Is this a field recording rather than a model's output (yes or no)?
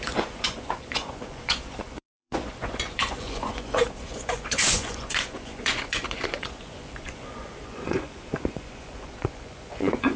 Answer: no